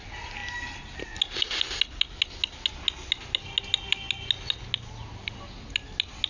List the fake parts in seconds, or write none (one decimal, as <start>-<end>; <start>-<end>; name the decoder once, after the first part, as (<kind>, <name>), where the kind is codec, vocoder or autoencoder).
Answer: none